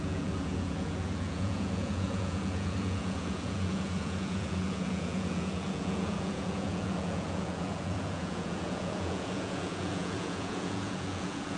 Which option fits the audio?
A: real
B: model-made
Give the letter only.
B